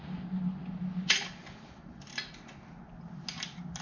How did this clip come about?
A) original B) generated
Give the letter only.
A